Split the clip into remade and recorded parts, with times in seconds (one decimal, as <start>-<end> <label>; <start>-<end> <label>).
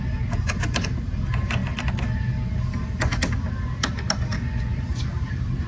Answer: 0.0-5.7 recorded